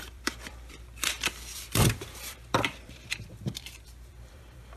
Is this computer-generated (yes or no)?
yes